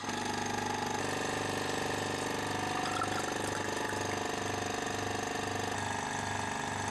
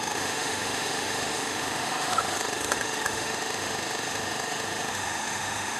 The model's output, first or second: second